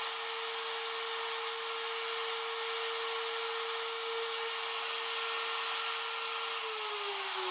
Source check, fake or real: real